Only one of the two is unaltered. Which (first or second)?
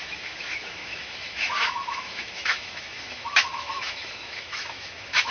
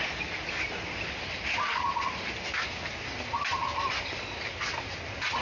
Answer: second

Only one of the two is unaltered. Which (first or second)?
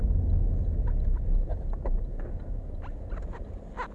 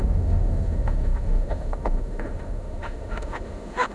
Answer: first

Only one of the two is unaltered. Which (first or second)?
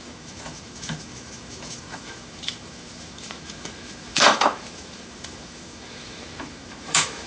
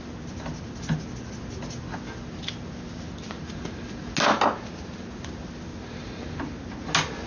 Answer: second